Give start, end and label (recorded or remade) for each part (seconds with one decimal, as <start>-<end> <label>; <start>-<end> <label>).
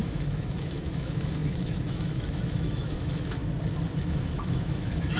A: 0.0-3.4 remade; 3.4-4.0 recorded; 4.0-5.2 remade